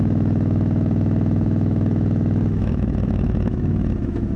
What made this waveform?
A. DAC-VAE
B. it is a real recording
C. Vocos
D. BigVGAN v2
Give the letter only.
A